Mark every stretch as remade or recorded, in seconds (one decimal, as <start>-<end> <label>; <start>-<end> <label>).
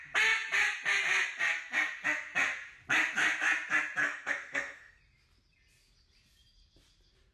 0.0-4.0 recorded; 4.0-5.0 remade; 5.0-7.3 recorded